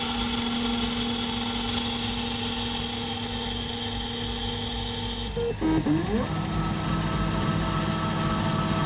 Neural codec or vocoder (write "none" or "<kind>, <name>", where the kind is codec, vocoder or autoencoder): none